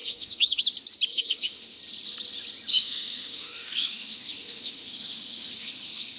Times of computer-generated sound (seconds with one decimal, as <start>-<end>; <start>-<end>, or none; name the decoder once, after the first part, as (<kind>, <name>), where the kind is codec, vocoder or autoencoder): 0.0-0.6 (autoencoder, DAC-VAE); 1.1-1.8; 2.7-6.2